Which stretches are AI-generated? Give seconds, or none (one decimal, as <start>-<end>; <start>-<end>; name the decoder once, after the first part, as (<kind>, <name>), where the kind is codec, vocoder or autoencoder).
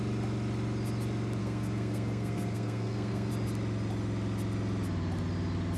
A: 1.4-3.3 (codec, SNAC)